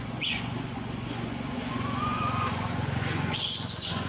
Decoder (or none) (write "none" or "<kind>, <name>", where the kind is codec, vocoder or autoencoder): vocoder, Vocos